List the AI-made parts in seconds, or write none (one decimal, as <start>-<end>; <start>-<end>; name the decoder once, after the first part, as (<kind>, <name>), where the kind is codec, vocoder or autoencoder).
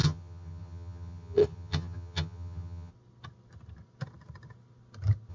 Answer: 0.0-2.9 (vocoder, HiFi-GAN)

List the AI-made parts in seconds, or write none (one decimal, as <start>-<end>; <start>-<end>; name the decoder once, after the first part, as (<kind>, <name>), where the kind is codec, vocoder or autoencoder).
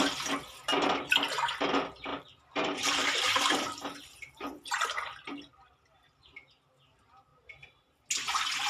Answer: 2.1-4.7 (vocoder, BigVGAN v2)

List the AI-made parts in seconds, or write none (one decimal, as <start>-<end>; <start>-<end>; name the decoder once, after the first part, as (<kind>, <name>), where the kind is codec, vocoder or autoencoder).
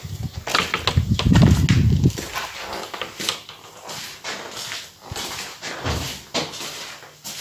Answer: none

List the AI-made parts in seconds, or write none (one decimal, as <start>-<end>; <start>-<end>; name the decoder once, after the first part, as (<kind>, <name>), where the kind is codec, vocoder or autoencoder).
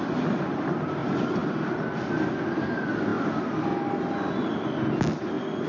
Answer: none